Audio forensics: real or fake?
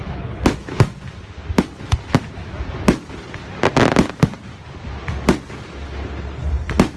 real